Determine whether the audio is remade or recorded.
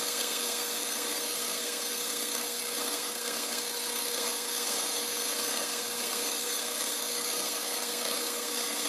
remade